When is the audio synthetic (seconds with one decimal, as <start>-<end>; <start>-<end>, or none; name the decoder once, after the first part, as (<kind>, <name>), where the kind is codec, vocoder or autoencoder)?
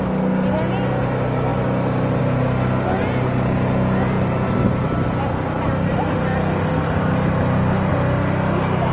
none